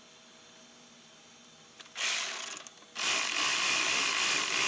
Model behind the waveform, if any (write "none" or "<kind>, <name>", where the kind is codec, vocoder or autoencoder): none